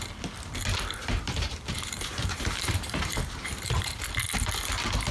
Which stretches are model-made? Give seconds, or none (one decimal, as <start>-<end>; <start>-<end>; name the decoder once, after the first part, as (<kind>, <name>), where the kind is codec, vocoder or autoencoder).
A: 1.0-4.1 (vocoder, BigVGAN v2)